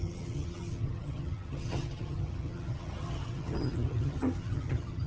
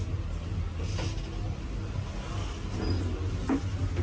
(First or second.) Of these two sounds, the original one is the second